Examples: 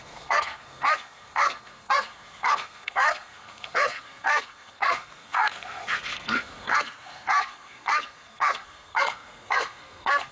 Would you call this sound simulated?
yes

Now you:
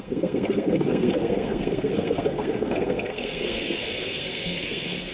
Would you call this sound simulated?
yes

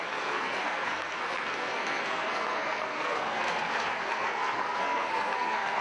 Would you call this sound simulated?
yes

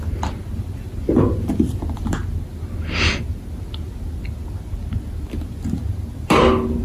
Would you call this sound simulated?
no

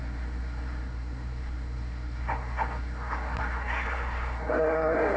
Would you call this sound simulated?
yes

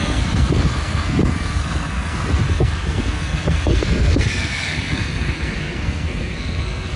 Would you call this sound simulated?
yes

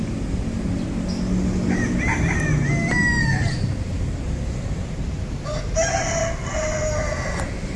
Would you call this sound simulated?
no